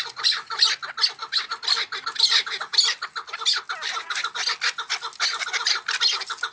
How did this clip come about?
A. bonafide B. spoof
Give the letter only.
A